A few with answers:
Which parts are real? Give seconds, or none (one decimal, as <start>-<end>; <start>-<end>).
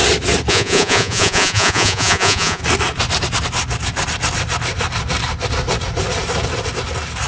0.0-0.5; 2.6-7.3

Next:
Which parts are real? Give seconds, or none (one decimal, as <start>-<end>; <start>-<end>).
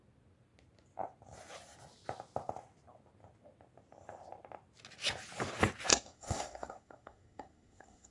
0.0-5.9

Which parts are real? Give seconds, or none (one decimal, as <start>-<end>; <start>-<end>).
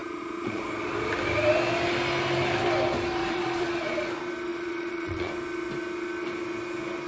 0.6-3.2; 4.1-4.5; 5.3-7.1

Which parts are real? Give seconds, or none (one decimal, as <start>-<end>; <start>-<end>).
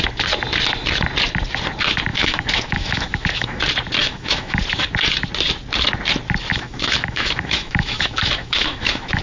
0.0-2.1; 3.6-4.0; 4.6-6.5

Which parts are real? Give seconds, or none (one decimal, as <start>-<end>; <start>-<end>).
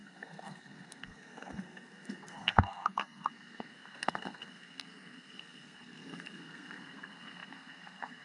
none